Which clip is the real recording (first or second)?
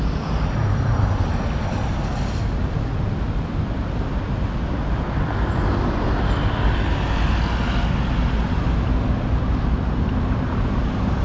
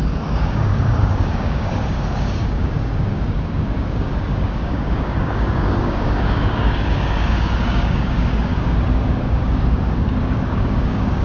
first